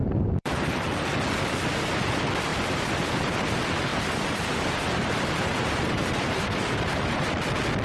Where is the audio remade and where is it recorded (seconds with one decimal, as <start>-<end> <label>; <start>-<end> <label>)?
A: 0.0-0.9 remade; 0.9-2.5 recorded; 2.5-3.5 remade; 3.5-3.9 recorded; 3.9-7.3 remade; 7.3-7.8 recorded

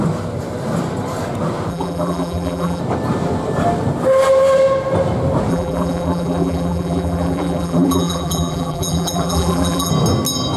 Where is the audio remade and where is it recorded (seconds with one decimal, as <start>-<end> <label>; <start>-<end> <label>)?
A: 0.0-1.7 recorded; 1.7-2.8 remade; 2.8-5.5 recorded; 5.5-9.9 remade; 9.9-10.6 recorded

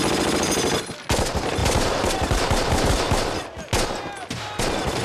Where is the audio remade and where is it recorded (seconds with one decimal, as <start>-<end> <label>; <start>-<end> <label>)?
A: 0.0-5.0 recorded